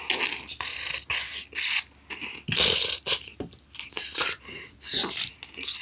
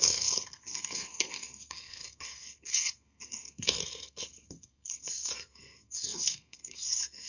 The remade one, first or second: second